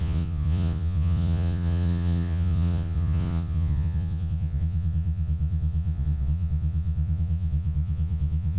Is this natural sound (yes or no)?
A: no